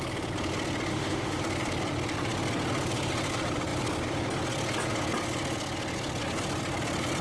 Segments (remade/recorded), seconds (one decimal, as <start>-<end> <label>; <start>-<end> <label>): 0.0-0.9 recorded; 0.9-1.4 remade; 1.4-7.2 recorded